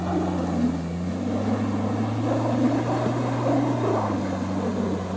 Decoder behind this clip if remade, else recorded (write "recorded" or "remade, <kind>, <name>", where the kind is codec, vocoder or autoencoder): recorded